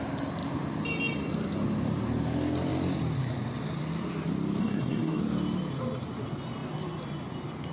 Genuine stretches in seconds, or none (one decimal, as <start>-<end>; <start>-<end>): 0.0-4.6; 5.2-7.7